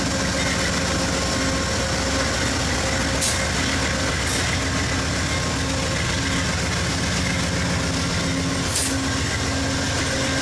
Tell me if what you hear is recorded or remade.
recorded